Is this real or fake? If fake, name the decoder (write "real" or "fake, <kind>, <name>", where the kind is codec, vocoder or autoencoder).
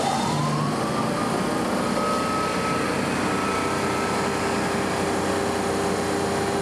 real